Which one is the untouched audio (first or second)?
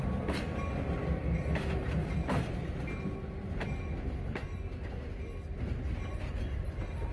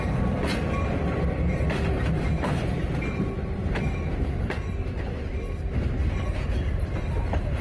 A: first